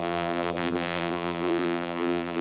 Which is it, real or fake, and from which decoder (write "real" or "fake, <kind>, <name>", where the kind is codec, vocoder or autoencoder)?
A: fake, vocoder, BigVGAN v2